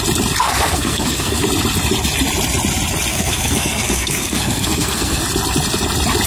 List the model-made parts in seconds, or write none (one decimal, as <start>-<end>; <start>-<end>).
0.4-1.4; 3.1-5.2